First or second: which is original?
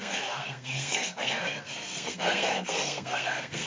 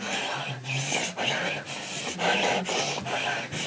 second